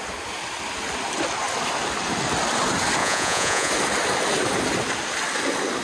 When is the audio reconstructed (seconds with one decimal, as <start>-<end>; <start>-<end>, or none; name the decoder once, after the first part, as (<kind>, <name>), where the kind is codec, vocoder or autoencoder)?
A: 3.0-3.7 (vocoder, Vocos)